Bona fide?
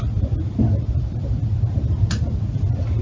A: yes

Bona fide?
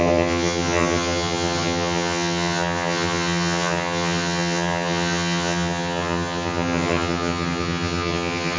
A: no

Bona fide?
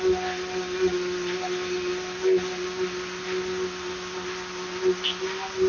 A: yes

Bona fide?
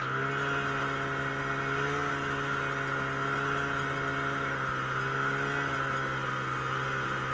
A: yes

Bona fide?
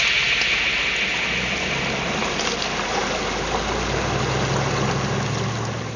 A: yes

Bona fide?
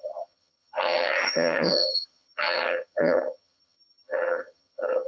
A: no